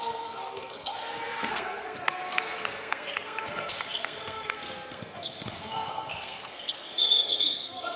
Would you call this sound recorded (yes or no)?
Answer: no